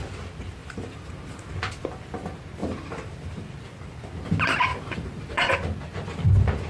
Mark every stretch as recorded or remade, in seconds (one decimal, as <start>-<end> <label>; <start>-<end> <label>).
0.0-0.6 recorded; 0.6-1.5 remade; 1.5-2.6 recorded; 2.6-4.1 remade; 4.1-4.7 recorded; 4.7-5.5 remade; 5.5-6.7 recorded